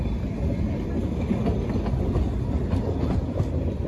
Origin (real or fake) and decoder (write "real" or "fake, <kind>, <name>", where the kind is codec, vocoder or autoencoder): real